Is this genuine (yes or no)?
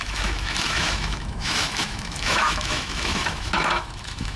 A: no